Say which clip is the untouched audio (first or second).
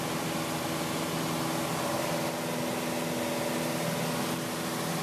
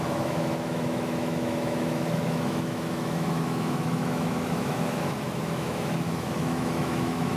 first